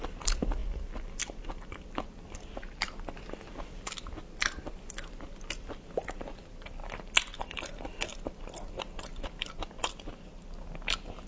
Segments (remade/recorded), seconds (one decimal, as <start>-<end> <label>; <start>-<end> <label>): 0.0-11.3 recorded